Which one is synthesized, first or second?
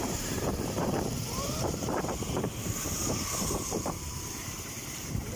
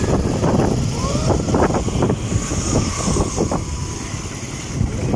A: first